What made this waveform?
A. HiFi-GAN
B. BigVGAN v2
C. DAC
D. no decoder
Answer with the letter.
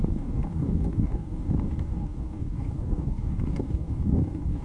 C